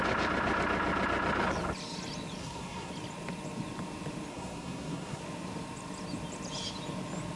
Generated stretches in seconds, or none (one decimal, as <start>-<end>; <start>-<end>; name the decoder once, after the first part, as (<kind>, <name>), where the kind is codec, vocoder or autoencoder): 2.4-2.9 (codec, SNAC); 4.3-5.2